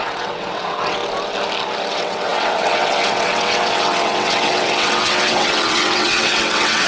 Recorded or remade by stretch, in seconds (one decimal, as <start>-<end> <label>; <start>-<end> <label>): 0.0-1.0 remade; 1.0-1.9 recorded; 1.9-6.9 remade